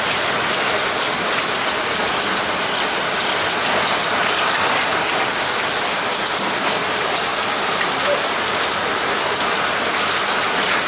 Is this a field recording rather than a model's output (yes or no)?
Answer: yes